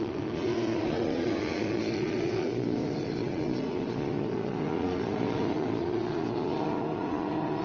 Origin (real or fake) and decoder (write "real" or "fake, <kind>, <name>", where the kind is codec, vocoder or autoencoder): fake, vocoder, Vocos